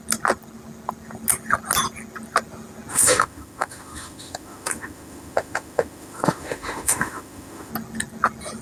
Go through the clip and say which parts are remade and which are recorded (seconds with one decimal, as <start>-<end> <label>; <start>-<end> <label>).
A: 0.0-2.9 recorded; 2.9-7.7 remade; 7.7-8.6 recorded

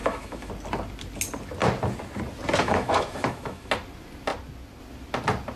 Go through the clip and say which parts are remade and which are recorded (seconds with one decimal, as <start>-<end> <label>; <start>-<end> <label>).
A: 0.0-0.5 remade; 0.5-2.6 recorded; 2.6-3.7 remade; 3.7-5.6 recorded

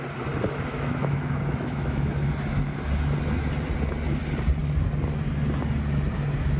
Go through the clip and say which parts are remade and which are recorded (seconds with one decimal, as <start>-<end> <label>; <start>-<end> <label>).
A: 0.0-0.7 recorded; 0.7-2.3 remade; 2.3-6.6 recorded

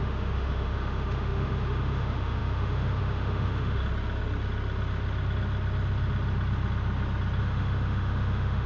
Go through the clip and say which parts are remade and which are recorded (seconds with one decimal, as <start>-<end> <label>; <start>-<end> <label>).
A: 0.0-3.8 remade; 3.8-7.4 recorded; 7.4-8.7 remade